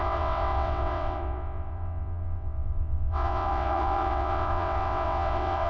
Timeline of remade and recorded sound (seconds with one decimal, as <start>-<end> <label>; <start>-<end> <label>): 0.0-5.7 remade